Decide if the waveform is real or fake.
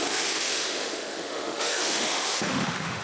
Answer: fake